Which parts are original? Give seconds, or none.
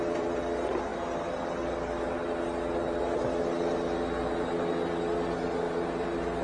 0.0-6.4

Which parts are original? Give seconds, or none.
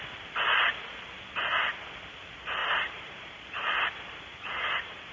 0.0-2.6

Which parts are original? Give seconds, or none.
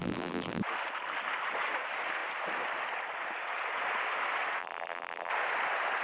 0.6-4.6; 5.3-6.0